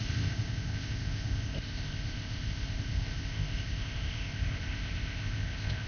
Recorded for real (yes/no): no